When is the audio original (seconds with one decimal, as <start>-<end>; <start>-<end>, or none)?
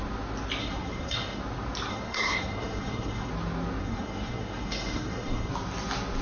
0.0-0.6; 1.4-1.9; 3.3-3.8; 5.5-6.2